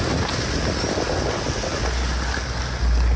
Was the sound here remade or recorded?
recorded